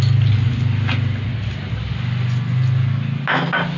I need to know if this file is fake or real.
real